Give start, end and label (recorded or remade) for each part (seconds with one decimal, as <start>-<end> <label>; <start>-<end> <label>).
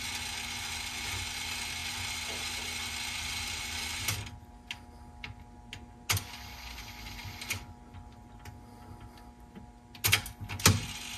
0.0-11.2 recorded